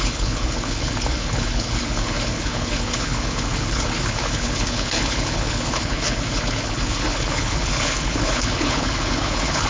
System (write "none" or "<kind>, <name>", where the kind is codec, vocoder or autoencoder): codec, HILCodec